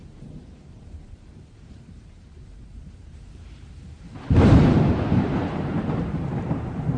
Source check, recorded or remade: remade